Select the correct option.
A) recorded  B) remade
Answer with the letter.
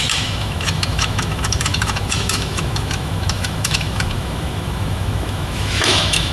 B